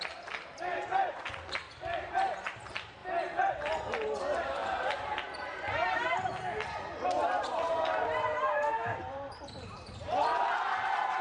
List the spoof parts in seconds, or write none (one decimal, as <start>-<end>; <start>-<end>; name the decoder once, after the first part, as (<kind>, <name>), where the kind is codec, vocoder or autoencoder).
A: 0.0-6.3 (vocoder, BigVGAN v2); 7.0-11.2